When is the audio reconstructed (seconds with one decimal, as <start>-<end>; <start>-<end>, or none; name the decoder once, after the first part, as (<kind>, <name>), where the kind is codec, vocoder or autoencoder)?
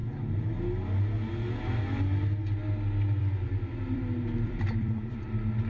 3.2-5.7 (vocoder, BigVGAN v2)